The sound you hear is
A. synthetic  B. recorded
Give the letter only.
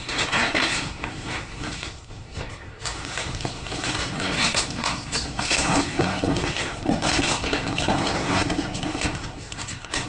A